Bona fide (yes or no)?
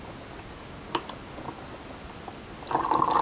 yes